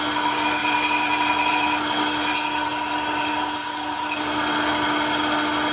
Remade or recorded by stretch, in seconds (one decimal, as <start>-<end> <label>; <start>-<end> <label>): 0.0-5.7 recorded